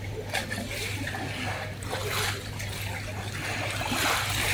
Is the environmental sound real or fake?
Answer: real